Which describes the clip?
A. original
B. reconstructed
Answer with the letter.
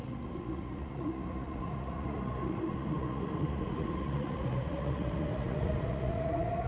B